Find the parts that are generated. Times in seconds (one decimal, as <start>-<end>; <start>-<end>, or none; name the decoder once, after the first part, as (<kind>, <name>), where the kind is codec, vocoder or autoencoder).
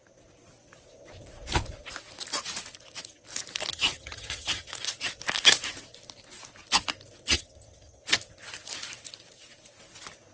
3.7-4.7 (vocoder, HiFi-GAN); 7.3-8.0